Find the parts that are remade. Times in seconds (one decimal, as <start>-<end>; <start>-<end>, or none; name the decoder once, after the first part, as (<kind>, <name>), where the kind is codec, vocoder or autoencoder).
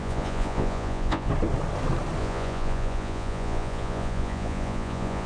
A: 0.0-1.3 (vocoder, Vocos); 2.2-5.3